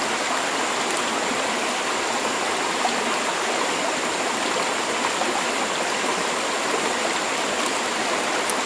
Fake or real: real